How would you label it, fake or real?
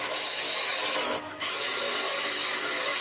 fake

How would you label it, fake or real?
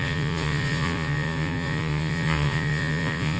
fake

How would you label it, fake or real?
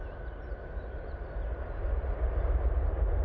real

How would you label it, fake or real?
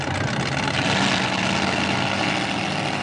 real